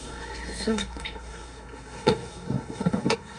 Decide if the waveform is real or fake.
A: fake